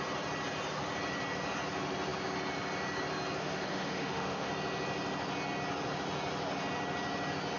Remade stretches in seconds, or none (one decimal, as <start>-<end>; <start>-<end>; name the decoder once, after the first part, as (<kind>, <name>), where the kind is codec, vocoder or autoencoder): 3.4-4.5 (autoencoder, DAC-VAE)